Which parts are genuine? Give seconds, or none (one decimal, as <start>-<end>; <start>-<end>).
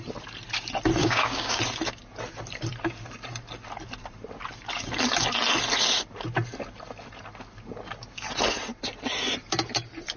0.0-1.0; 1.6-10.2